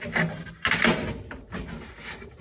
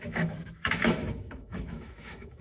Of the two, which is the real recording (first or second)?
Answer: first